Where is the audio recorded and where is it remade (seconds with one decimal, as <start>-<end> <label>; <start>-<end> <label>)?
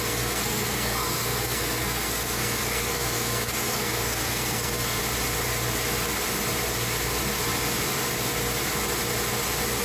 0.0-5.0 remade; 5.0-9.8 recorded